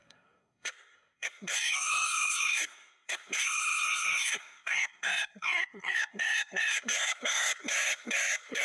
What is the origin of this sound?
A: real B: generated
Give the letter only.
B